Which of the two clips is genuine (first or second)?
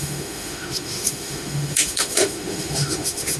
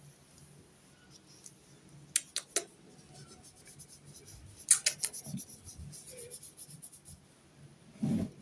second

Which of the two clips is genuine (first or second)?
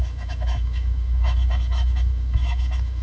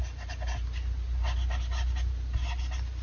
second